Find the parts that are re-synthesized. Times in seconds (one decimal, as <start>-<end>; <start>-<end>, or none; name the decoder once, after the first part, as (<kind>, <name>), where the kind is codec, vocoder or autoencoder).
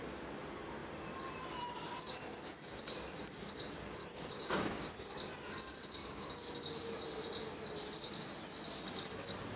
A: 4.0-5.1 (codec, DAC)